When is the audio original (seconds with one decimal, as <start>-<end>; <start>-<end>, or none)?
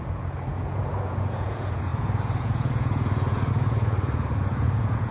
none